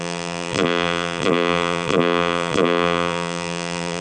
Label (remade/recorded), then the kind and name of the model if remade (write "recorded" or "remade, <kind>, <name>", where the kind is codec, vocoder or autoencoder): remade, vocoder, BigVGAN v2